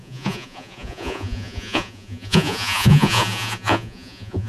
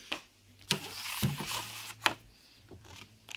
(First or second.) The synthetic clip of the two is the first